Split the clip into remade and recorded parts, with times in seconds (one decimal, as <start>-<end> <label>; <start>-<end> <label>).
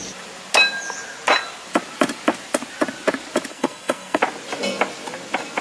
0.0-3.5 recorded; 3.5-4.2 remade; 4.2-5.6 recorded